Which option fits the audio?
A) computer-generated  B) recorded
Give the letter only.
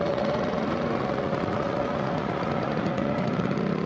A